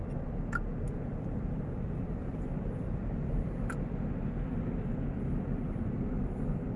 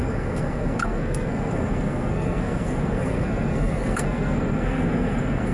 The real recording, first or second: first